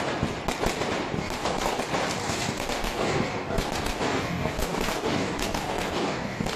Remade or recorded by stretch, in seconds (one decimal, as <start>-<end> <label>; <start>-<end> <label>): 0.0-1.2 recorded; 1.2-1.8 remade; 1.8-2.2 recorded; 2.2-6.6 remade